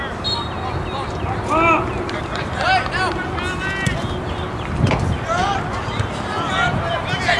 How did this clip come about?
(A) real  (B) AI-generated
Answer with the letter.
A